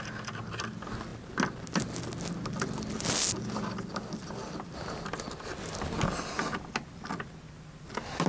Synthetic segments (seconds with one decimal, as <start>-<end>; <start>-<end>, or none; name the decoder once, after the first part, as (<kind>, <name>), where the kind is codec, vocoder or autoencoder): none